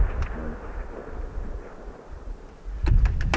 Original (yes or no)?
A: yes